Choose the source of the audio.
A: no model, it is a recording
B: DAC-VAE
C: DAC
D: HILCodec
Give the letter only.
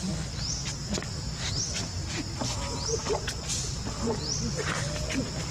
A